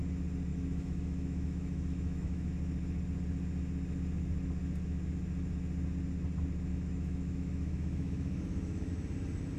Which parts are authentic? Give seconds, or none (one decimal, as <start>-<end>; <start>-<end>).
0.0-0.5; 2.5-6.7; 8.9-9.6